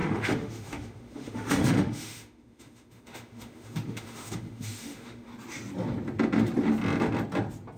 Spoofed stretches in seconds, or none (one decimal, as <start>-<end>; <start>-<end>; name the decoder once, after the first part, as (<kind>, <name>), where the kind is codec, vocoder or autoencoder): 0.0-5.3 (autoencoder, DAC-VAE)